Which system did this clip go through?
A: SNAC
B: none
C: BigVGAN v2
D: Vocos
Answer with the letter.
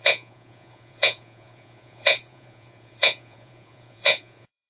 D